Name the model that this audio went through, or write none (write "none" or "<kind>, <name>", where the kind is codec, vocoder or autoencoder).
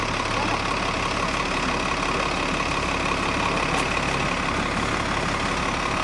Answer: none